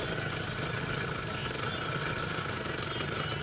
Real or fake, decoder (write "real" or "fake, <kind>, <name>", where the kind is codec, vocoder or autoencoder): real